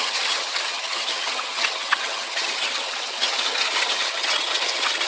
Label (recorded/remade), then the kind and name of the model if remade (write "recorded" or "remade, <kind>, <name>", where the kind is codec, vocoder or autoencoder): remade, vocoder, HiFi-GAN